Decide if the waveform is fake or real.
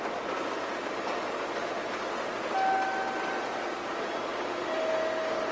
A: real